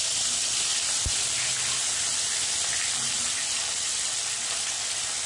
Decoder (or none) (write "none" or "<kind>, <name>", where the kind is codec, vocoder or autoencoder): none